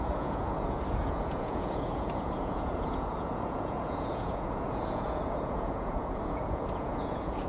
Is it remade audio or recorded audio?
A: remade